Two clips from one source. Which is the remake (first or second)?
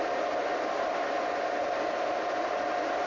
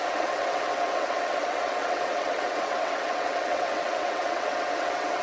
second